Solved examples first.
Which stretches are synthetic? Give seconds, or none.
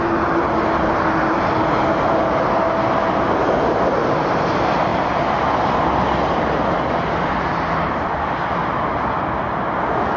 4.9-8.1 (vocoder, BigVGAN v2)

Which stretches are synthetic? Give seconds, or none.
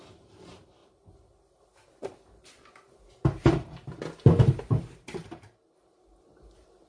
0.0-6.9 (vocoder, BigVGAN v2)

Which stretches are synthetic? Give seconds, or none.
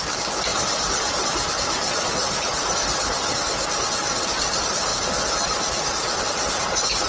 0.5-1.5 (vocoder, BigVGAN v2); 2.2-3.3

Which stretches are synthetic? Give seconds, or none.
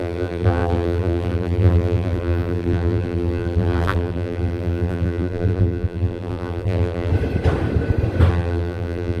0.0-7.1 (vocoder, BigVGAN v2); 8.3-9.2